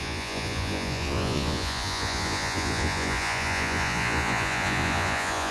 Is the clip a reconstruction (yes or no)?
yes